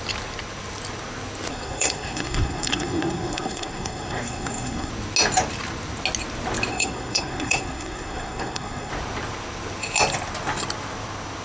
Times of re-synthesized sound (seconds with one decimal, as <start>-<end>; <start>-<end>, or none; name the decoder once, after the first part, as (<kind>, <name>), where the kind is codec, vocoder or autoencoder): 1.5-4.9 (codec, SNAC); 6.7-8.9